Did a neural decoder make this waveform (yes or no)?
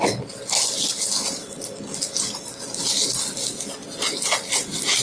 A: no